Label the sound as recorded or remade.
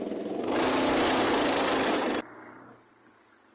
recorded